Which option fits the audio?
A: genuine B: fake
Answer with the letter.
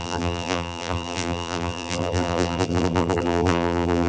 B